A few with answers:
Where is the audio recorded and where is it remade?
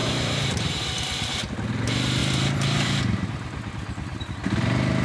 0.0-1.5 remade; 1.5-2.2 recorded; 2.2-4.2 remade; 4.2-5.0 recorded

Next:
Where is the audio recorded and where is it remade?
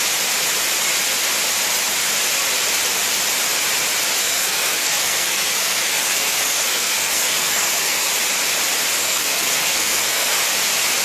0.0-4.2 recorded; 4.2-8.1 remade; 8.1-9.0 recorded; 9.0-10.4 remade; 10.4-11.0 recorded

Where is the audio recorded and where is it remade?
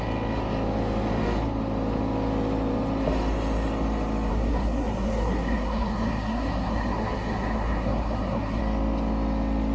0.0-4.3 recorded; 4.3-8.6 remade; 8.6-9.7 recorded